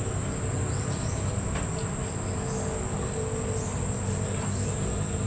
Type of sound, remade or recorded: recorded